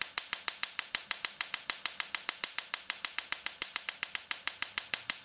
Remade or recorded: remade